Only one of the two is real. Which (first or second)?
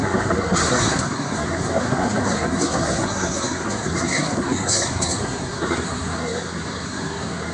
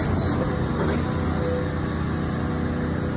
second